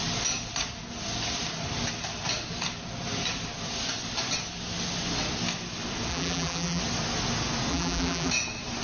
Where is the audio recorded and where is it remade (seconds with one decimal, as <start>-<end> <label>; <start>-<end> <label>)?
0.0-6.1 recorded; 6.1-6.8 remade; 6.8-7.7 recorded; 7.7-8.3 remade; 8.3-8.8 recorded